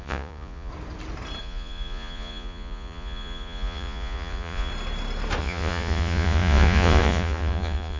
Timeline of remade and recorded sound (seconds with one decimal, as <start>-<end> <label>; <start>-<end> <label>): 0.0-0.7 remade; 0.7-1.4 recorded; 1.4-4.7 remade; 4.7-5.4 recorded; 5.4-8.0 remade

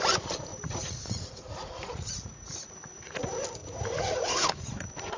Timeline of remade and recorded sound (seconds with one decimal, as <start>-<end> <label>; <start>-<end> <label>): 0.0-0.5 recorded; 0.5-3.2 remade; 3.2-3.6 recorded; 3.6-5.2 remade

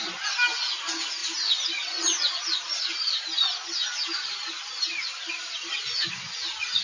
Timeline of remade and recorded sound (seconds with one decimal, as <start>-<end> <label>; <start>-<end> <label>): 0.0-6.8 recorded

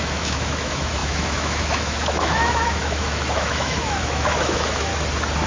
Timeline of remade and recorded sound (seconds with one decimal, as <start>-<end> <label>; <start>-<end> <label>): 0.0-4.9 remade; 4.9-5.5 recorded

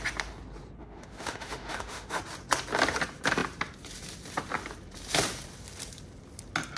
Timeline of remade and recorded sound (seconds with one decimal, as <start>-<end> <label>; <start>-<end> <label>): 0.0-0.8 recorded; 0.8-2.2 remade; 2.2-6.8 recorded

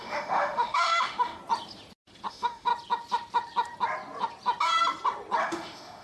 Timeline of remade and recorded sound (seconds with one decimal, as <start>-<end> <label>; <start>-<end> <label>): 0.0-1.4 remade; 1.4-2.3 recorded; 2.3-2.7 remade; 2.7-5.4 recorded; 5.4-6.0 remade

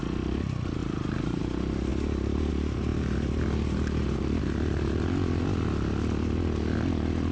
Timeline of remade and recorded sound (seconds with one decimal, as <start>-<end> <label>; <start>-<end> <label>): 0.0-7.3 recorded

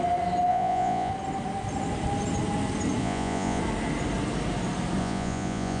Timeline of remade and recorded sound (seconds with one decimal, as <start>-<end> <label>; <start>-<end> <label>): 0.0-0.5 recorded; 0.5-1.1 remade; 1.1-3.0 recorded; 3.0-3.6 remade; 3.6-5.0 recorded; 5.0-5.8 remade